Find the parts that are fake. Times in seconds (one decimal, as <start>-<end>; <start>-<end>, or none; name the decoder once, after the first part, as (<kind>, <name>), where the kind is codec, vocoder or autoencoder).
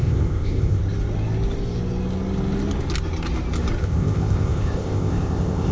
0.0-0.8 (codec, ZipCodec); 3.8-5.7